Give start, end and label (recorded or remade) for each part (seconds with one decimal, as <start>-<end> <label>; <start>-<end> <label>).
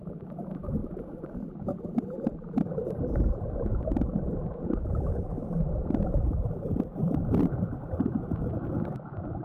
0.0-8.4 remade; 8.4-9.4 recorded